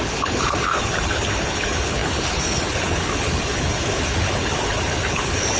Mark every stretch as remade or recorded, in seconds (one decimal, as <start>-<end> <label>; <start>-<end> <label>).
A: 0.0-5.6 remade